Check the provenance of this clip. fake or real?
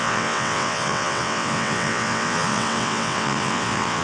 fake